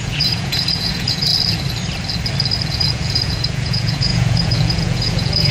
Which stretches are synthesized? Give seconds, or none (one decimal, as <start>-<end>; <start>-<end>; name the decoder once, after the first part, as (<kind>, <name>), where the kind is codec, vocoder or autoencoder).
0.0-1.3 (vocoder, Vocos); 2.7-5.5